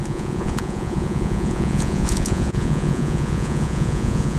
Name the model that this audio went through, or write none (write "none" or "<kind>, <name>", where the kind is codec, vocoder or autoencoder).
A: vocoder, Vocos